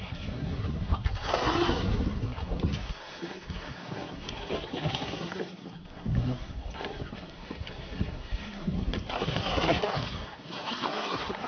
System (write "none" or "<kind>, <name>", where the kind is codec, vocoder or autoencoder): codec, SNAC